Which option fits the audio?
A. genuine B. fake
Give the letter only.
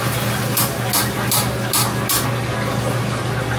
A